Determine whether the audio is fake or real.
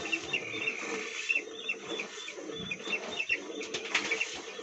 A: real